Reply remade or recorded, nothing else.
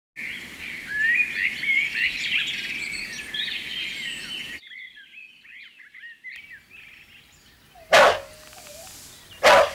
recorded